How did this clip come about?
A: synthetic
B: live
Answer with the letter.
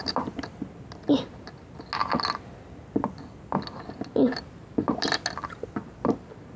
B